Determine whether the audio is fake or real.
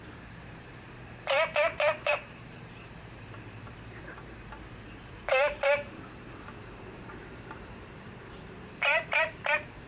fake